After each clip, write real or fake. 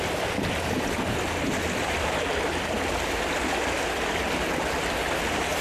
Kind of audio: real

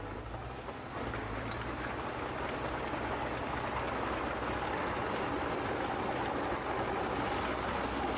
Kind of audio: real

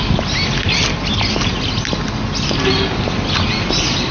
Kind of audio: real